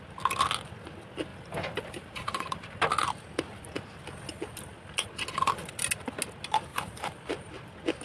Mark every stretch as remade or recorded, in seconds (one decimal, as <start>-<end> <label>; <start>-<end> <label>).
0.0-1.3 recorded; 1.3-2.9 remade; 2.9-3.5 recorded; 3.5-4.0 remade; 4.0-6.7 recorded; 6.7-7.5 remade; 7.5-8.0 recorded